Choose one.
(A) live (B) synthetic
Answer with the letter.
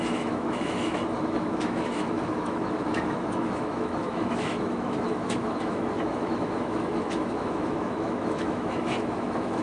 B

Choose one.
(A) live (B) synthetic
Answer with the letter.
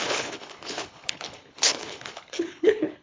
B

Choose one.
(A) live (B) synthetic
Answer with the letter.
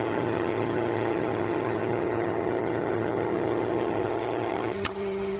B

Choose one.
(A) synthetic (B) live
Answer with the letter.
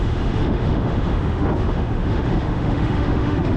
A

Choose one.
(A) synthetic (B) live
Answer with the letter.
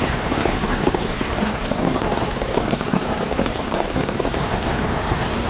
A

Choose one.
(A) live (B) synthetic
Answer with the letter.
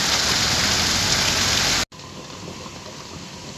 A